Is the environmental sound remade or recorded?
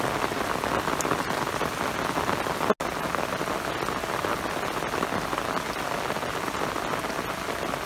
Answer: recorded